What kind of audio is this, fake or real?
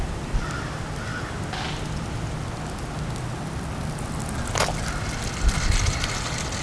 real